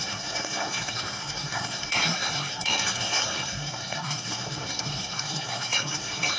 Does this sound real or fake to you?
fake